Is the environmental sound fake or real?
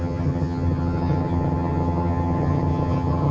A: fake